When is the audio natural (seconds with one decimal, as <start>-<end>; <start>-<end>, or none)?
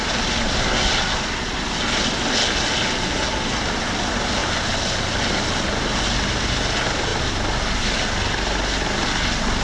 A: 0.0-9.6